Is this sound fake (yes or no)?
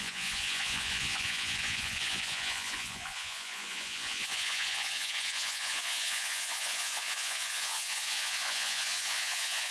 yes